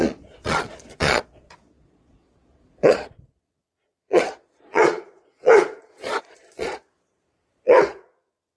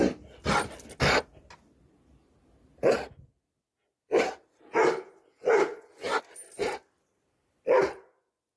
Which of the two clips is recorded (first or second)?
second